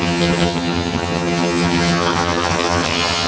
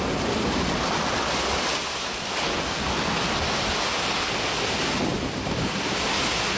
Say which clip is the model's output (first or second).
first